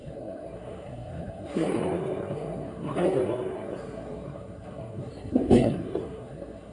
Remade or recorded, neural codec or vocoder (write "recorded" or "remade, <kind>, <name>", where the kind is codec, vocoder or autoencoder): remade, codec, SNAC